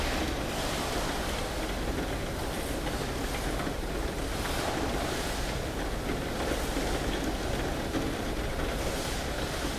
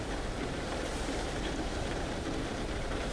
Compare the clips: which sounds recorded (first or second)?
first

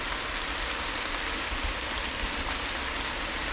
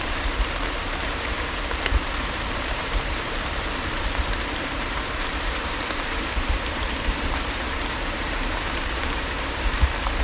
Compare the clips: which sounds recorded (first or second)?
first